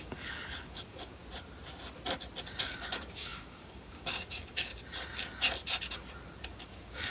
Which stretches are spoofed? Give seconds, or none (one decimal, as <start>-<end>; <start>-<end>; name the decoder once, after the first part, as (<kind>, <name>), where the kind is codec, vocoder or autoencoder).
0.0-1.2 (codec, DAC); 2.6-4.7; 6.4-7.1